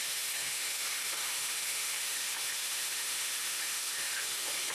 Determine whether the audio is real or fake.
fake